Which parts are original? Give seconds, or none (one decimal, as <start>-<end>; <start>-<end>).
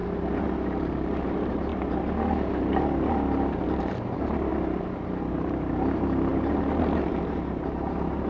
0.0-0.8; 1.7-3.8; 4.5-5.2